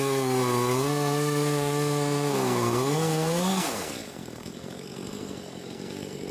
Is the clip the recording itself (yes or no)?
no